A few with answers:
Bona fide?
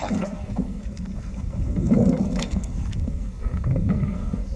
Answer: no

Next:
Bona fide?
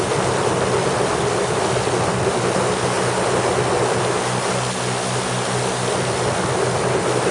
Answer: yes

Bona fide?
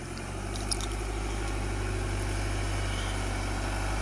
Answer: yes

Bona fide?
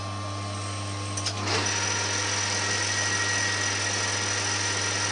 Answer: yes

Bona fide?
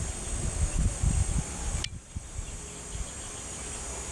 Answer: yes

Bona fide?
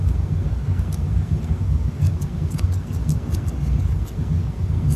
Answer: no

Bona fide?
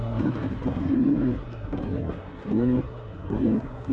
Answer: no